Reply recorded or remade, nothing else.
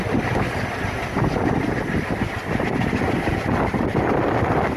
recorded